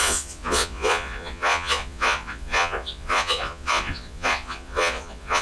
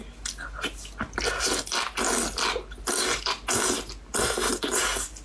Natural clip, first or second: second